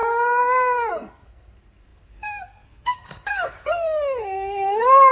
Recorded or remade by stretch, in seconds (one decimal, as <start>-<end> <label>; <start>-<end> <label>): 0.0-5.1 remade